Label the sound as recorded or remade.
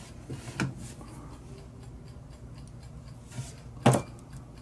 recorded